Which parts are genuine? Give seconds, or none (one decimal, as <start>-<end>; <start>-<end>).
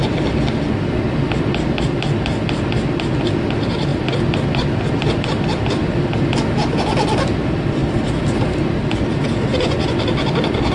0.0-9.5; 10.0-10.7